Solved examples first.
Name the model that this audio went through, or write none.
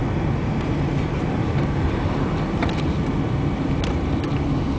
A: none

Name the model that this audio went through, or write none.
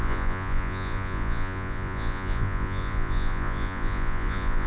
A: vocoder, Vocos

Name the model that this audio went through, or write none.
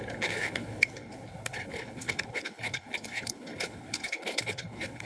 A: codec, HILCodec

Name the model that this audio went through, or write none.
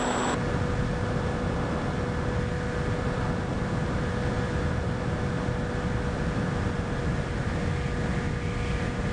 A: none